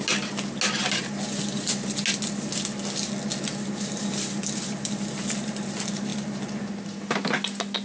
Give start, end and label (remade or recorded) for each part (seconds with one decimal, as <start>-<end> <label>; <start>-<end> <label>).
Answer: 0.0-7.8 recorded